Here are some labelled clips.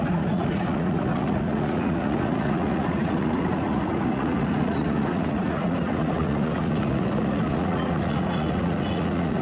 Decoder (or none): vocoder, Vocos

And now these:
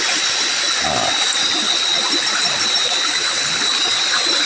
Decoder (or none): none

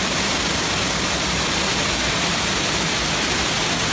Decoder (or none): none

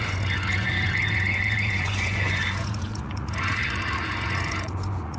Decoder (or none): vocoder, Vocos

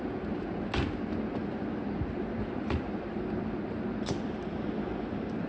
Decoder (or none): none